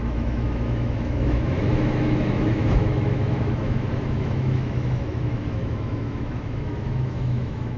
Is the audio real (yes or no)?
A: no